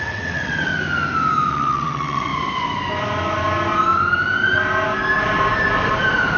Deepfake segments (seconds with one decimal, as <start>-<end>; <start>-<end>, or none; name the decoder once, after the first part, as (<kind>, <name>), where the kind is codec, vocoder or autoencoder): 0.0-0.7 (vocoder, WaveNeXt); 1.5-2.3